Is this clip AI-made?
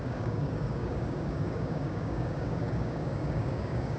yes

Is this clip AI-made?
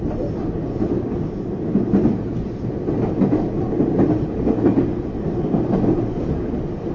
no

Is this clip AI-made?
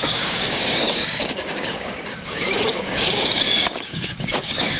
yes